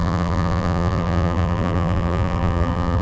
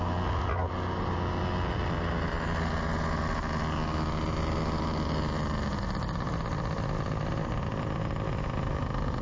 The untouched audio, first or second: second